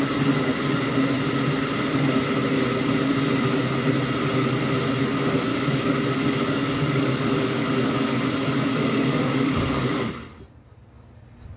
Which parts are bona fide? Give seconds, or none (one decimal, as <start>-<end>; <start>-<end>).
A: 0.0-5.5; 10.1-11.6